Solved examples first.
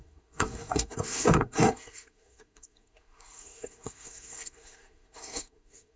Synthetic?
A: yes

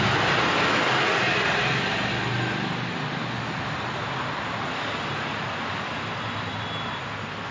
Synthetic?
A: no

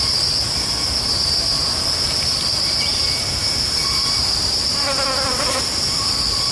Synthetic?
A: no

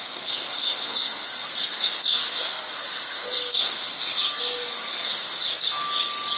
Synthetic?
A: yes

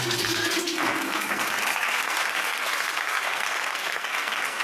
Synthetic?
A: yes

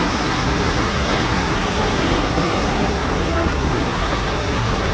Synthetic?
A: yes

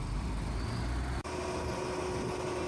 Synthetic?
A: no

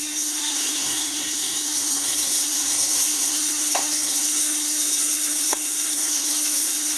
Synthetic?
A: yes